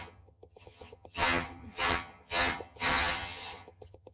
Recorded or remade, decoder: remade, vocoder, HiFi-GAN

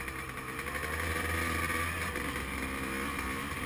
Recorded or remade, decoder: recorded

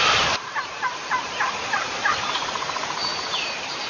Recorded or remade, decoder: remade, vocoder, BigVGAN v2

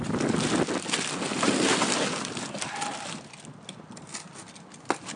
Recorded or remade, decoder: recorded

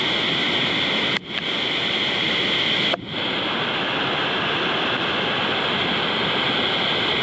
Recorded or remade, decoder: recorded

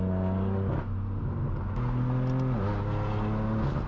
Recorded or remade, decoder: recorded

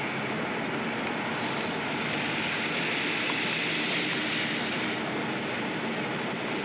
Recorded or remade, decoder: recorded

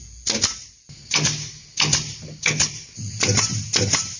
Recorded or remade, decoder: recorded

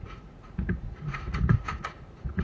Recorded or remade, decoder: remade, vocoder, Vocos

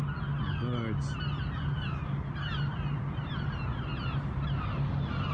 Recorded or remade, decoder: recorded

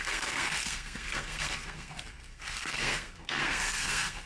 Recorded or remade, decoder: remade, codec, SNAC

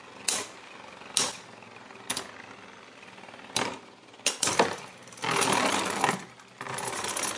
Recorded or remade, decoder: recorded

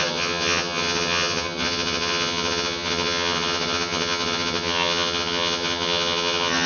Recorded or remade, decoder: remade, vocoder, HiFi-GAN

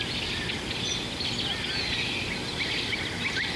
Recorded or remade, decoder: recorded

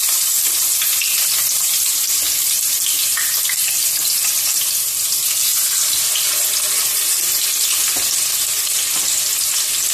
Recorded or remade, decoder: recorded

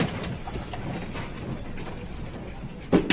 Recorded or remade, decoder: recorded